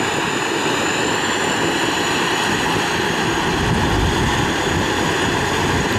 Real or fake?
real